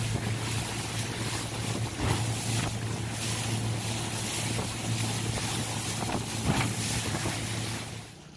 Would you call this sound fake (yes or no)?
no